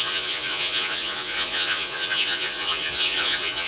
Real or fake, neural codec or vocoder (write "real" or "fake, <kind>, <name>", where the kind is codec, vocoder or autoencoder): fake, vocoder, Vocos